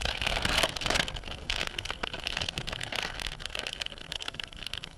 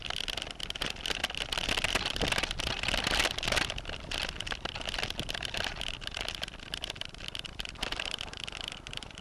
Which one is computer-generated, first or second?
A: first